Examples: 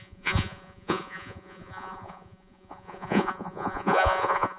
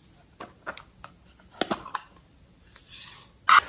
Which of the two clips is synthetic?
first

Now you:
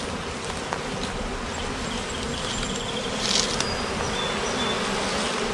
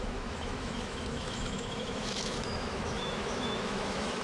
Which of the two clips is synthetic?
second